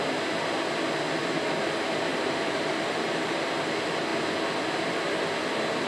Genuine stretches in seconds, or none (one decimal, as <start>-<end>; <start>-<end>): 0.0-2.1; 3.5-5.9